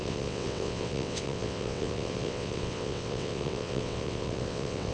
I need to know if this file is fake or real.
fake